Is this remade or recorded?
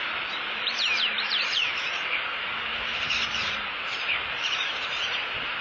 remade